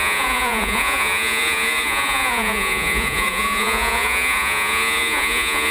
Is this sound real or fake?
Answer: fake